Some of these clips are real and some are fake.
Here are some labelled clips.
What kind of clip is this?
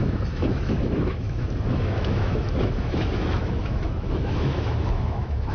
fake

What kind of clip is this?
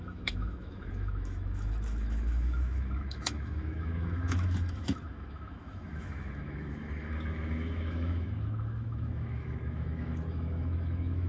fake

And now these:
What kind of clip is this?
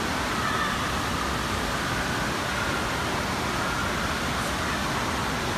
real